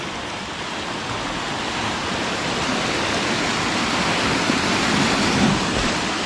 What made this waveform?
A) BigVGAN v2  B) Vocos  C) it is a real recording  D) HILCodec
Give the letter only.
C